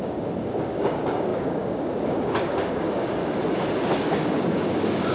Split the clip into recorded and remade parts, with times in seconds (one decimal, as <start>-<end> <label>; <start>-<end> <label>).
0.0-3.2 remade; 3.2-4.1 recorded; 4.1-5.1 remade